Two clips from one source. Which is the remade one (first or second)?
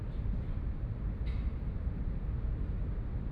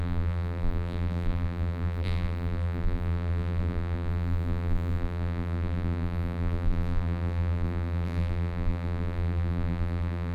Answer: second